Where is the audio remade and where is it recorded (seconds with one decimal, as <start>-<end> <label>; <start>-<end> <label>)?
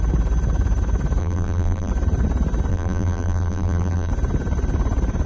0.0-1.2 recorded; 1.2-1.9 remade; 1.9-2.7 recorded; 2.7-4.1 remade; 4.1-5.3 recorded